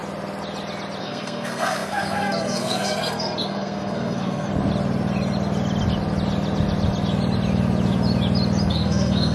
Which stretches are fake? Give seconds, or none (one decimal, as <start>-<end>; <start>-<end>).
1.0-4.5; 8.7-9.3